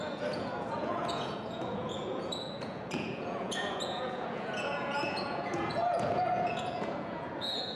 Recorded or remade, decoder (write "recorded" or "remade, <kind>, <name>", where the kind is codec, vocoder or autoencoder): remade, vocoder, Vocos